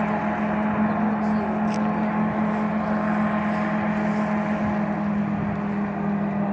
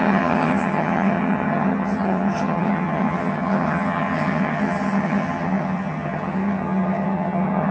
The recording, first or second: first